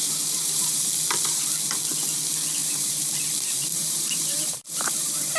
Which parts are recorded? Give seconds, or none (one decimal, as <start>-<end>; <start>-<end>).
0.9-2.6; 3.1-3.7